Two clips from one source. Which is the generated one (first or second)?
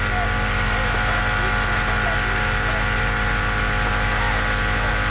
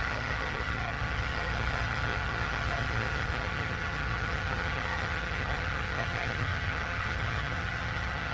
second